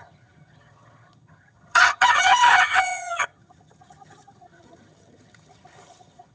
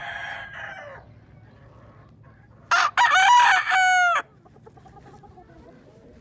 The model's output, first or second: first